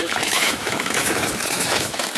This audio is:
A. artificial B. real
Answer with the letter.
A